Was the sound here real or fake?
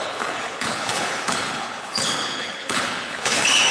fake